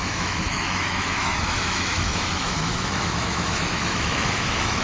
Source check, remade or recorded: remade